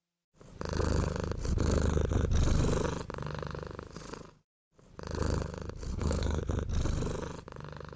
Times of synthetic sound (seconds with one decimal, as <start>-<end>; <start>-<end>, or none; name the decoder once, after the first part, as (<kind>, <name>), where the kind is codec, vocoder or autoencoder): 5.9-6.4 (codec, SNAC)